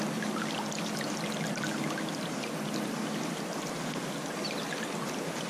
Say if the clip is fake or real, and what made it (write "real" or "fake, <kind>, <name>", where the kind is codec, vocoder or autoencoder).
real